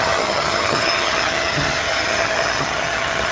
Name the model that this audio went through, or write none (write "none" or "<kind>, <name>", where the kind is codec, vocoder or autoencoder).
vocoder, HiFi-GAN